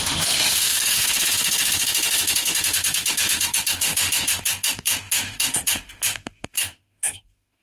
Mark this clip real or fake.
fake